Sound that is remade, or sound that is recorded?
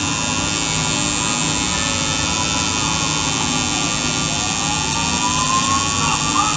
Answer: recorded